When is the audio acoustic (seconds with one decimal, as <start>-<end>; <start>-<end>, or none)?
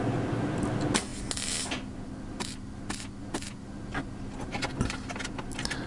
0.0-5.9